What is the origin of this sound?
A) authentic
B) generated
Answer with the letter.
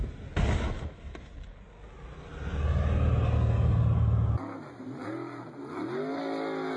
A